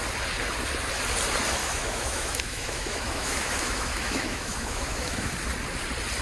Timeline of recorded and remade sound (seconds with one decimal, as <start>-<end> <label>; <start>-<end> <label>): 0.0-1.6 recorded; 1.6-5.3 remade; 5.3-6.2 recorded